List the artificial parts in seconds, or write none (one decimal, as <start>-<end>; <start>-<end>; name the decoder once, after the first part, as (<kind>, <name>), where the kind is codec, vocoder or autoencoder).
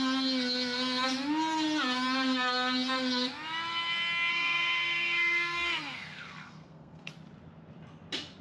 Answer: 4.3-7.1 (codec, SNAC)